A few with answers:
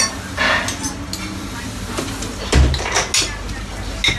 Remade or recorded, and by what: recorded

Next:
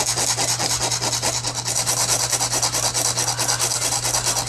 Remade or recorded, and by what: recorded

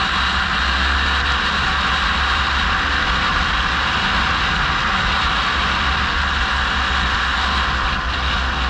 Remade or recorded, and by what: recorded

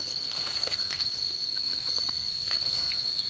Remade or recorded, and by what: remade, codec, SNAC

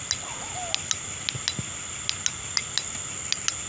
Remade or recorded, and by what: recorded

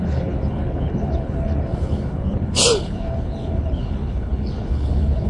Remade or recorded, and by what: remade, codec, HILCodec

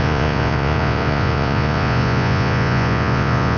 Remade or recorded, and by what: remade, vocoder, Vocos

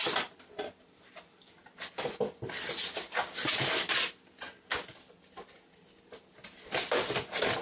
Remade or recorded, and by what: recorded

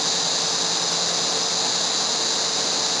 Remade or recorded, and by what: recorded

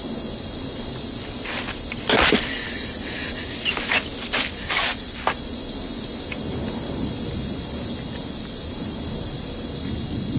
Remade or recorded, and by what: recorded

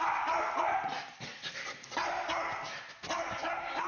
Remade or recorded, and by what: recorded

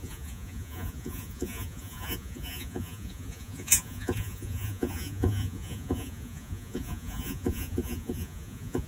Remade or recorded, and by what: remade, vocoder, Vocos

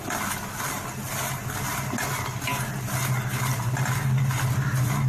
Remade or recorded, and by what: recorded